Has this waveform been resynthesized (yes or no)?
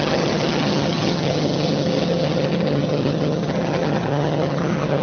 yes